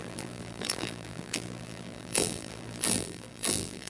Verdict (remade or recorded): remade